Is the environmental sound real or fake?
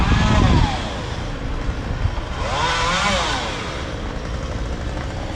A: real